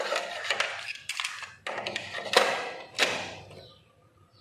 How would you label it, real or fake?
real